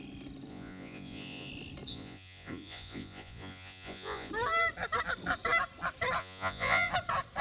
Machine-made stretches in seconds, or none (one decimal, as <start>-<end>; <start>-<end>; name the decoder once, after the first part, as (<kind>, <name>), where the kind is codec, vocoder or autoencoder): 0.5-1.5 (vocoder, Vocos); 1.9-4.3; 6.2-6.9